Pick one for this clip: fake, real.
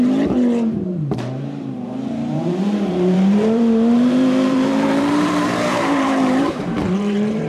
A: fake